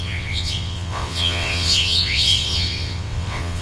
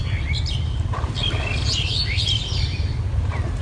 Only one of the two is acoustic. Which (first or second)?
second